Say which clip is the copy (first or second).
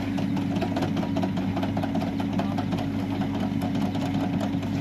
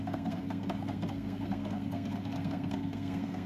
second